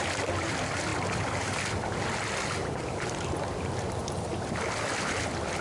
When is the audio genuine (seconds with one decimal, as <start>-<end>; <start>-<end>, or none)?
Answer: 0.0-2.6; 3.2-5.6